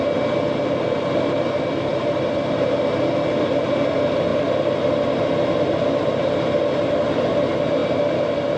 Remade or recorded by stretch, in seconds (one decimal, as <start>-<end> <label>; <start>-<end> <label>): 0.0-1.9 recorded; 1.9-3.1 remade; 3.1-7.8 recorded; 7.8-8.6 remade